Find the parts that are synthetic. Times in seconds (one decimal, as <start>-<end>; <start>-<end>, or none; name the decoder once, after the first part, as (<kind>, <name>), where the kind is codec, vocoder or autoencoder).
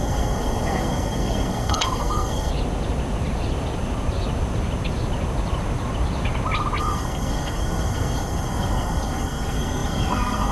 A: 0.0-2.5 (codec, SNAC); 6.8-10.5